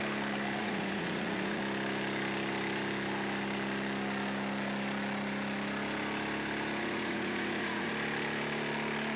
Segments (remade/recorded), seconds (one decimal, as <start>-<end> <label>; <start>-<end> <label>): 0.0-0.6 recorded; 0.6-1.6 remade; 1.6-6.8 recorded; 6.8-7.9 remade; 7.9-9.2 recorded